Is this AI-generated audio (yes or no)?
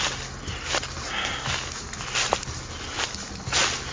no